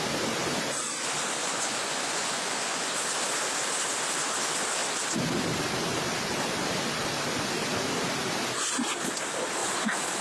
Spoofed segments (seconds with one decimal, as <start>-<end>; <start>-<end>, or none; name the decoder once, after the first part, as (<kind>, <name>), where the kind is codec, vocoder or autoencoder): 1.4-2.9 (vocoder, Vocos)